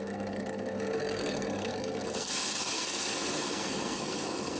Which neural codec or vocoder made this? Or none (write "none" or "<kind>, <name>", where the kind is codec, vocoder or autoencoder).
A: codec, SNAC